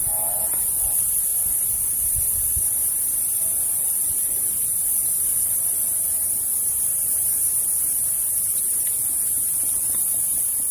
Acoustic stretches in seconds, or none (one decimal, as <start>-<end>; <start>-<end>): 1.3-3.4